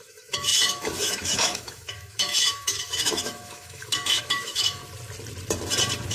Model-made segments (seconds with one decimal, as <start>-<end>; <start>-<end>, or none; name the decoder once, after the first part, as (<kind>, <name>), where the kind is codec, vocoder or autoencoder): 0.0-4.8 (autoencoder, DAC-VAE)